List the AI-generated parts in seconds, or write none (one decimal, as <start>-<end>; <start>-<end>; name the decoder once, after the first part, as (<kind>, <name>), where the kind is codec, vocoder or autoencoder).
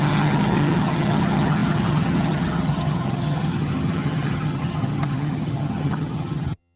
0.0-6.8 (vocoder, HiFi-GAN)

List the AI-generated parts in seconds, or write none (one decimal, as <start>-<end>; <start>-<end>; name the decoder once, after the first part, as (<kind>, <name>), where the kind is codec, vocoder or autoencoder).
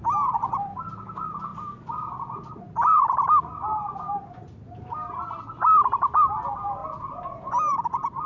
none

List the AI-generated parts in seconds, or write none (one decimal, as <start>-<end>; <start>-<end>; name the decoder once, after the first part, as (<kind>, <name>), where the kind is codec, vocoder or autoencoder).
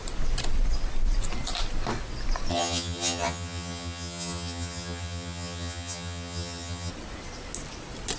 2.5-6.9 (vocoder, HiFi-GAN)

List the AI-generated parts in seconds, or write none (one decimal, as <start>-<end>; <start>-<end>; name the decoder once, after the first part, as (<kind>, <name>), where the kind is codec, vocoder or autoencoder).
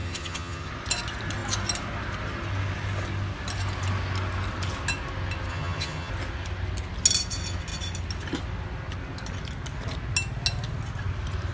0.0-0.7 (vocoder, HiFi-GAN); 5.5-6.1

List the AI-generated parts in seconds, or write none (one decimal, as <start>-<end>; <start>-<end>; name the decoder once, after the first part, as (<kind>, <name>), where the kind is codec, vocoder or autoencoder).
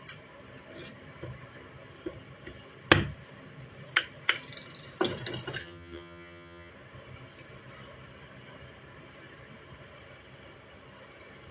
5.6-6.7 (vocoder, HiFi-GAN)